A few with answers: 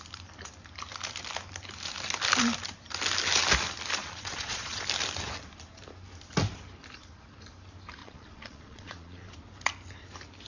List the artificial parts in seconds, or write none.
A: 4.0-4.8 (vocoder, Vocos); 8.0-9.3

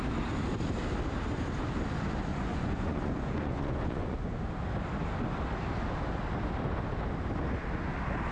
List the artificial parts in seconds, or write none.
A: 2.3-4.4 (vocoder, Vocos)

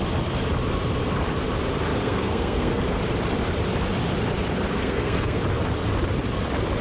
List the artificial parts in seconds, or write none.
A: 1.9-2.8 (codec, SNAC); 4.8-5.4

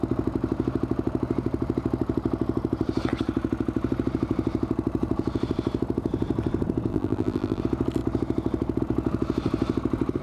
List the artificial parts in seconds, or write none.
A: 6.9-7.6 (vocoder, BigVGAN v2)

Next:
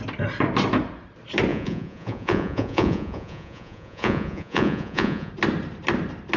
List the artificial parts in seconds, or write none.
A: 1.5-5.3 (vocoder, Vocos)

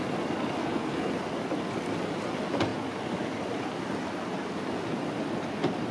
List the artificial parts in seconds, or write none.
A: 0.6-1.1 (codec, SNAC)

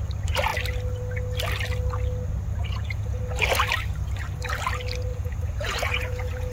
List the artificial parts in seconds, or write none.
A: 2.6-3.2 (vocoder, Vocos); 5.1-6.5